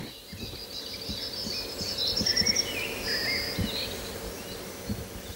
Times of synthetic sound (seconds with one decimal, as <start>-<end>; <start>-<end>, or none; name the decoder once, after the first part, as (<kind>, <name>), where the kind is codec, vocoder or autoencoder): none